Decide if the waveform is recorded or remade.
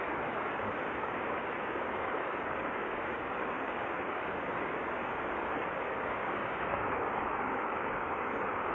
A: remade